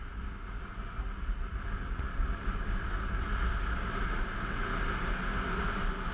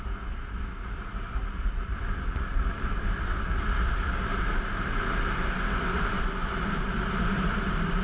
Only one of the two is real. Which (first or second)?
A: first